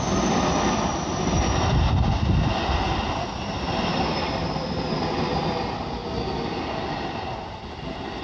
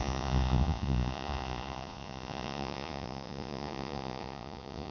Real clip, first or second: first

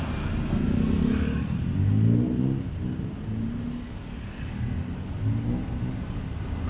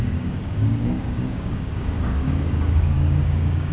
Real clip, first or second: first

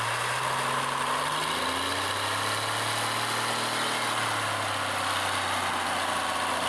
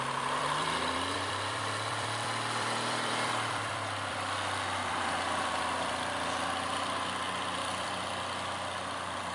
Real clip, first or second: first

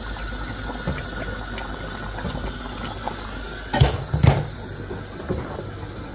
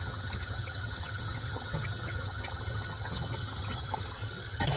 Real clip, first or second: first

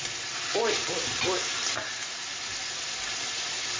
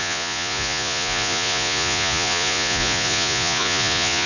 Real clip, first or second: first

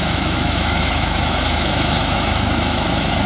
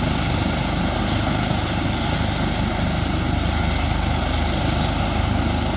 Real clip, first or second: second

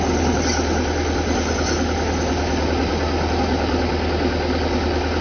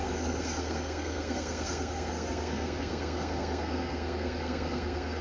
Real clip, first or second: first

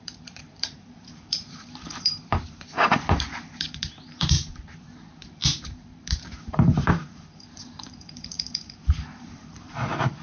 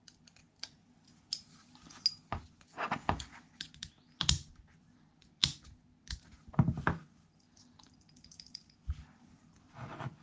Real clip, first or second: second